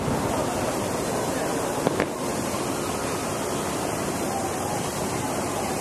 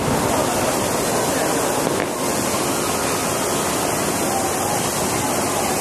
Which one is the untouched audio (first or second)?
second